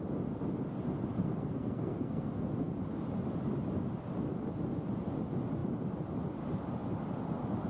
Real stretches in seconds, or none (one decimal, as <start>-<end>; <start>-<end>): 0.0-1.2; 2.7-7.7